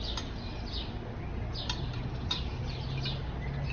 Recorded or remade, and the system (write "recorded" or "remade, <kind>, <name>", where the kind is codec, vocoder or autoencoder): recorded